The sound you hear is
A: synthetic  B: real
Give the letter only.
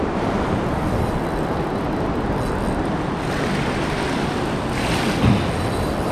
B